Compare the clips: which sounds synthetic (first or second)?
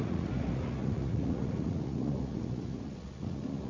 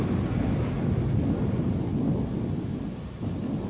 first